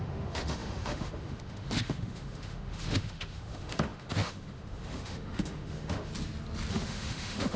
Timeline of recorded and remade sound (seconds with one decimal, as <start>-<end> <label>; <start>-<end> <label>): 0.0-6.1 remade; 6.1-6.7 recorded; 6.7-7.6 remade